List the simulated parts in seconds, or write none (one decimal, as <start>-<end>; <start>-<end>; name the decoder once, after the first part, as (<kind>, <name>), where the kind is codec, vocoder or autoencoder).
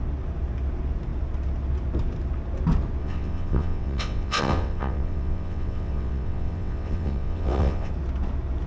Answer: 3.0-7.9 (vocoder, WaveNeXt)